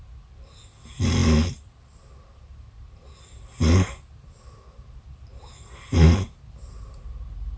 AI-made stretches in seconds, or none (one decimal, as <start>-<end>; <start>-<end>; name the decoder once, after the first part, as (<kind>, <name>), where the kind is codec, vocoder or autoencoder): none